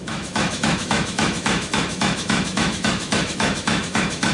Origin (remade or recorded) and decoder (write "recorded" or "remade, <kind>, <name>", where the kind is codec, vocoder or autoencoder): remade, autoencoder, DAC-VAE